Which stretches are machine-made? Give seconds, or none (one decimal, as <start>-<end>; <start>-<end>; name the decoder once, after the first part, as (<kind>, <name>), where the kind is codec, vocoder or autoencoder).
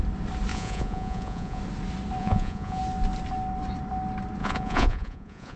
0.5-1.6 (vocoder, Vocos); 2.2-2.8; 4.4-5.6